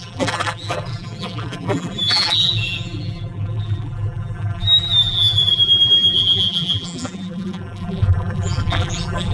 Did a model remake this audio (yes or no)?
yes